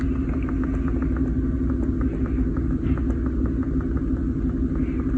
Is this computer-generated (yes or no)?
no